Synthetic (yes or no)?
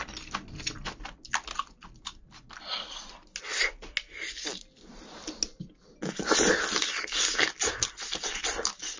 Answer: no